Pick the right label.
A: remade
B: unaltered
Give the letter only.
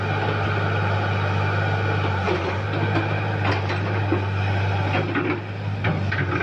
B